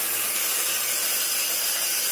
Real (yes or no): yes